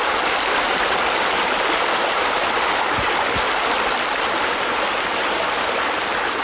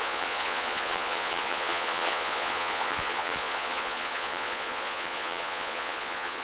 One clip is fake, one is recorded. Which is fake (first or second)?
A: second